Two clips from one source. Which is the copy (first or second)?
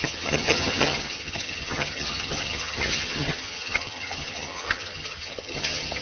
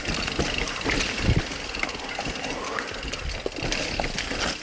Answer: first